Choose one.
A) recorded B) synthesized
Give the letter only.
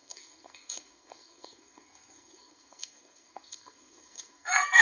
B